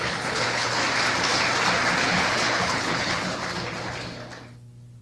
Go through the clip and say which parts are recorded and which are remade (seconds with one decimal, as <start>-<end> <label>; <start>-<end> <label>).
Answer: 0.0-0.8 remade; 0.8-2.0 recorded; 2.0-3.4 remade; 3.4-5.0 recorded